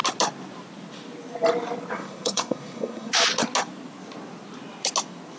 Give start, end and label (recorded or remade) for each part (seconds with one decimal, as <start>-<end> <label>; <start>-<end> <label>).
0.0-1.9 recorded; 1.9-3.1 remade; 3.1-5.4 recorded